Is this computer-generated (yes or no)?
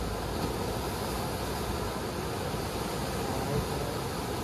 no